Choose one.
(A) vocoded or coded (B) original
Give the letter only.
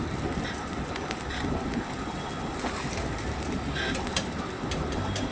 A